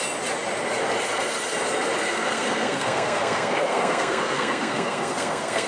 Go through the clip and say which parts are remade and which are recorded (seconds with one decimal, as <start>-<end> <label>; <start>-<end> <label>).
0.0-2.0 recorded; 2.0-5.7 remade